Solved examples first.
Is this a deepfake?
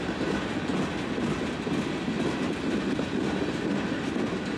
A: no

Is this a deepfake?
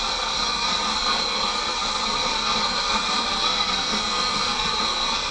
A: yes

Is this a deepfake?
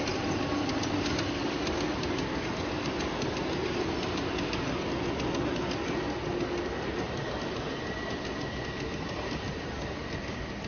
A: no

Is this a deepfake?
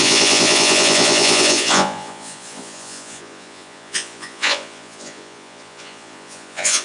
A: yes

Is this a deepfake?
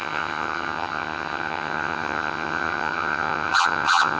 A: yes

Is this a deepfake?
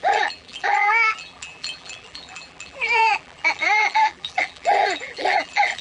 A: yes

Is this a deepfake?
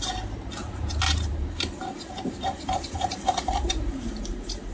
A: yes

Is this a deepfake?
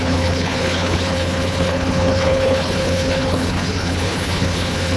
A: yes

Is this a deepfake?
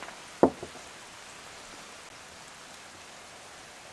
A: no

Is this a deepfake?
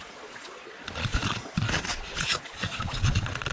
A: yes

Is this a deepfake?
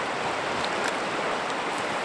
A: yes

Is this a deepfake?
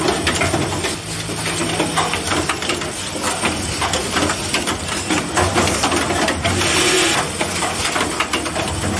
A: no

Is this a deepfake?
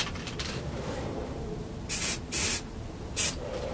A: no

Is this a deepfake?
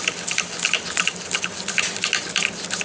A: no